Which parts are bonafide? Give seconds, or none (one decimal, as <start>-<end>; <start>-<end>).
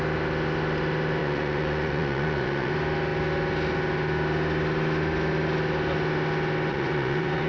0.0-1.2; 2.7-6.7